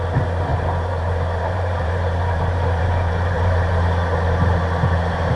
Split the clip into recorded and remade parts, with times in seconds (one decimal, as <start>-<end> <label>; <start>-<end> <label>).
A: 0.0-0.5 recorded; 0.5-3.7 remade; 3.7-5.4 recorded